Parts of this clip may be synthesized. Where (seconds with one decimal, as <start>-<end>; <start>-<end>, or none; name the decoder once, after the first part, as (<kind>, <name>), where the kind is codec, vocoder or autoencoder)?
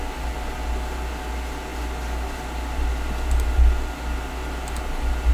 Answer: none